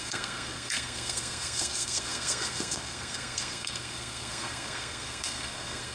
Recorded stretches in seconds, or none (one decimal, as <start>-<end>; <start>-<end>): none